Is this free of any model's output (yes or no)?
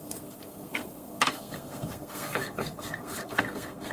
no